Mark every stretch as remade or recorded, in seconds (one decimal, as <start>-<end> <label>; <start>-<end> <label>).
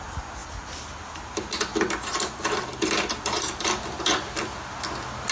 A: 0.0-5.3 recorded